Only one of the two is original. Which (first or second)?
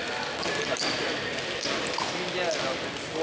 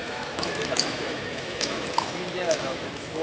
first